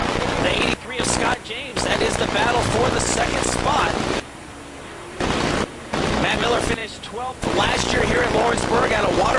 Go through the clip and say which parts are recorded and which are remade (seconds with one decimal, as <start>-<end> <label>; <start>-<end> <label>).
0.0-0.7 remade; 0.7-6.8 recorded; 6.8-8.2 remade; 8.2-9.4 recorded